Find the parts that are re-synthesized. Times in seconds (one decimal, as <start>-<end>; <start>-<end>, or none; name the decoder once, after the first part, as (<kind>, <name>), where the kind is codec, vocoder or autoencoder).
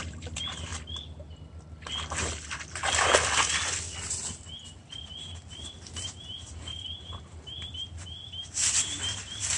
0.0-0.7 (vocoder, BigVGAN v2); 5.5-9.6